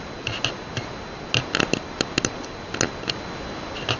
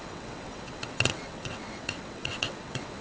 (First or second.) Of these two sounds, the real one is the first